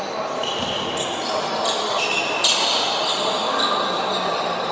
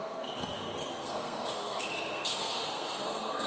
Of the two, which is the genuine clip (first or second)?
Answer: first